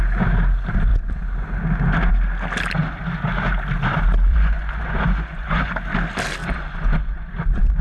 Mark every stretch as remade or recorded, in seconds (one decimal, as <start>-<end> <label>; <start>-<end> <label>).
0.0-4.3 recorded; 4.3-5.7 remade; 5.7-6.4 recorded; 6.4-7.8 remade